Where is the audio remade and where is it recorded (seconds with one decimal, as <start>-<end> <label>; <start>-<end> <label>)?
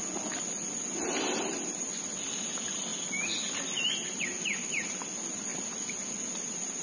0.0-6.8 recorded